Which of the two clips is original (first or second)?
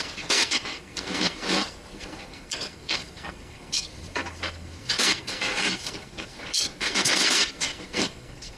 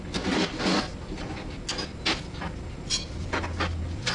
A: second